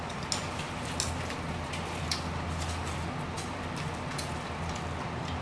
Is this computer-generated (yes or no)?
no